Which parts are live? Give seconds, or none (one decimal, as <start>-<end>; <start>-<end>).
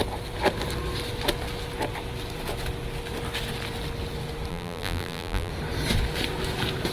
0.0-4.5; 5.5-6.9